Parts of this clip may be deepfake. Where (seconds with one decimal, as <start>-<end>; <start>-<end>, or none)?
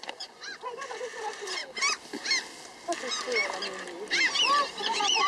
0.0-1.6; 4.8-5.3